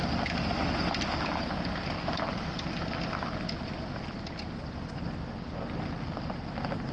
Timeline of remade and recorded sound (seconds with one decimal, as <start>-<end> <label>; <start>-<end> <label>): 0.0-6.9 recorded